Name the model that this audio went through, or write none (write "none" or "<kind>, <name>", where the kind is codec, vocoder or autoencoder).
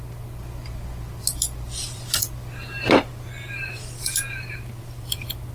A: none